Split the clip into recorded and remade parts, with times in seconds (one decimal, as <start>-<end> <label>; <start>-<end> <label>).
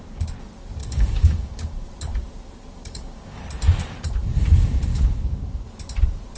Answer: 0.0-0.8 recorded; 0.8-1.8 remade; 1.8-2.8 recorded; 2.8-3.4 remade; 3.4-4.9 recorded; 4.9-5.6 remade; 5.6-6.4 recorded